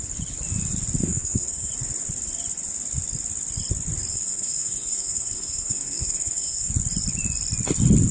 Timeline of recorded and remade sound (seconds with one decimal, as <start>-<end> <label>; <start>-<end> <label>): 0.0-1.0 recorded; 1.0-1.7 remade; 1.7-4.1 recorded; 4.1-6.7 remade; 6.7-8.1 recorded